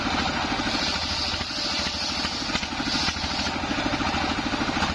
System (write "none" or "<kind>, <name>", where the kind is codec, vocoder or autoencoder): none